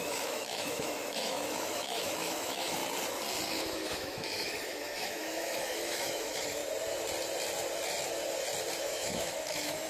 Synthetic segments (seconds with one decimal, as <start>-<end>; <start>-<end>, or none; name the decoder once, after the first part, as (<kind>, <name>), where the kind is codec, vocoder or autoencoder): 0.0-2.8 (autoencoder, DAC-VAE); 3.5-6.6; 8.8-9.9